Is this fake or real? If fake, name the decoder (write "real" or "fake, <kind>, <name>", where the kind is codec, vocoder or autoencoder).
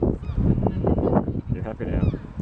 real